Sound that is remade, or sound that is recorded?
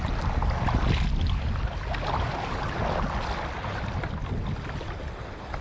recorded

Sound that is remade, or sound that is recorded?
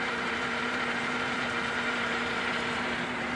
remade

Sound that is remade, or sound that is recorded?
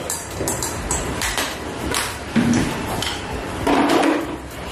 remade